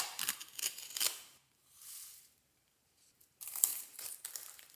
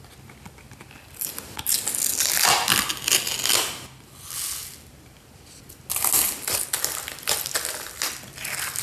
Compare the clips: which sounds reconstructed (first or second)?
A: first